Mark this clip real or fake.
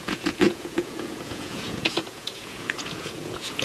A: fake